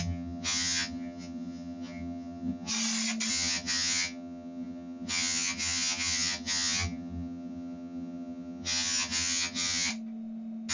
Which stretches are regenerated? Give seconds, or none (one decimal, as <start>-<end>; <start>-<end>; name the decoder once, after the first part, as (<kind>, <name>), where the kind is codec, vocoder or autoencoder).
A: 0.0-2.7 (vocoder, HiFi-GAN); 3.3-9.9